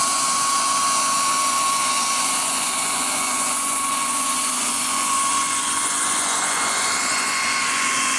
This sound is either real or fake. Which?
fake